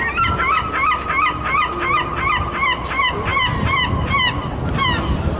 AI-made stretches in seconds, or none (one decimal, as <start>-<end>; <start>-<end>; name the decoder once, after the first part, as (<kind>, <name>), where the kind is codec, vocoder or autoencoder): none